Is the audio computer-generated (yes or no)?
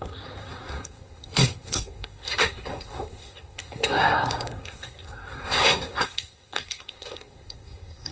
yes